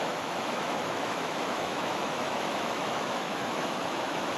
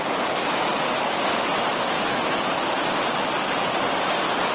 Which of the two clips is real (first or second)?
second